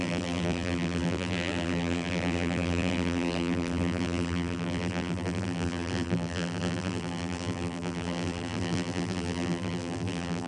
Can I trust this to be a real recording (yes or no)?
no